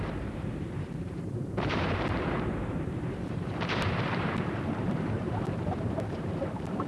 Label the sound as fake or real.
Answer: fake